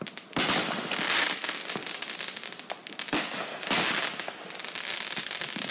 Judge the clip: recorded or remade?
recorded